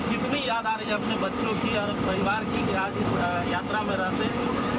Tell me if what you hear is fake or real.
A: real